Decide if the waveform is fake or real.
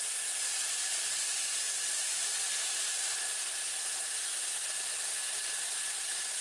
real